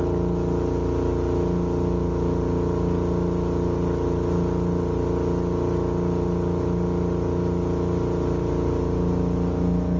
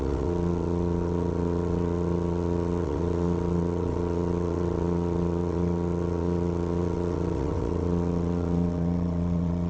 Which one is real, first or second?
first